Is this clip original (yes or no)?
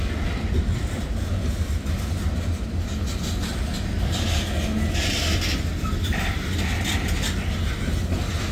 yes